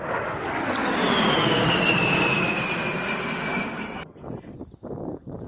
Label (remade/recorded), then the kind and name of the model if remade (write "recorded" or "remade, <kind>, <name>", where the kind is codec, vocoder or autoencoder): recorded